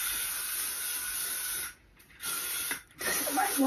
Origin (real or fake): real